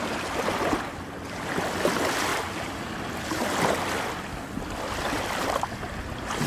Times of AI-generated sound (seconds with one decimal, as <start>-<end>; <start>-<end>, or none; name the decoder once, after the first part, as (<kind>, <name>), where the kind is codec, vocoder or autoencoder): none